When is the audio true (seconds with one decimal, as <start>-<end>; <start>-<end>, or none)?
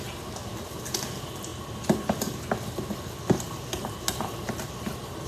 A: 0.0-5.3